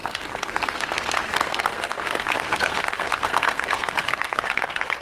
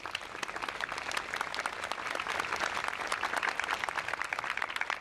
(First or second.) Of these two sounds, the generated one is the first